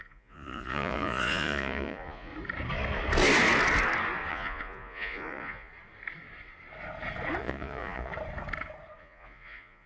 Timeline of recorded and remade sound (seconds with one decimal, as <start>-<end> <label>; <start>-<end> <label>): 0.0-2.3 remade; 2.3-4.3 recorded; 4.3-5.7 remade; 5.7-7.4 recorded; 7.4-8.1 remade; 8.1-9.0 recorded; 9.0-9.9 remade